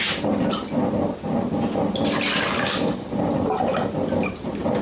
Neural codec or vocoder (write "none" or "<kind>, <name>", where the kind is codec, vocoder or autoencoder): none